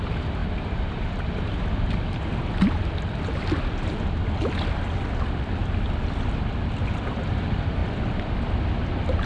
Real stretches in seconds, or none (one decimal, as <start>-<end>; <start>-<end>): 0.0-0.4; 1.4-2.3; 4.5-5.6; 7.2-7.8